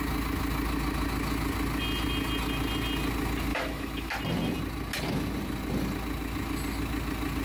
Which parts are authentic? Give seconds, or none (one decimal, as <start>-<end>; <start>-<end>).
0.0-3.5; 4.1-7.4

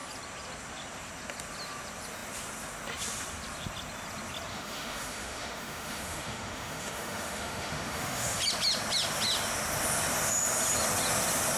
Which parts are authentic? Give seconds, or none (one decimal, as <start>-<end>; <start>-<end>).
0.0-4.5; 8.4-11.6

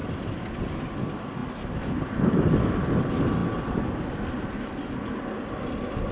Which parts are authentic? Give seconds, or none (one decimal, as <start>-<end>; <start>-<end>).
0.0-6.1

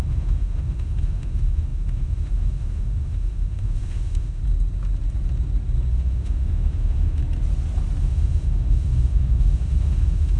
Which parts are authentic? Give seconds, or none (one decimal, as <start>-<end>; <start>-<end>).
4.4-5.9; 7.2-8.0

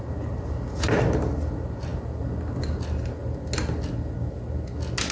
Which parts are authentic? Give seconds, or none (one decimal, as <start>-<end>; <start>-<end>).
0.0-5.1

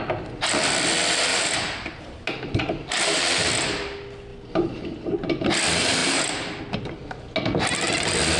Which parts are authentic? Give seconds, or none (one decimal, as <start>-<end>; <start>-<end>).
0.0-1.3; 3.2-6.0; 6.6-8.4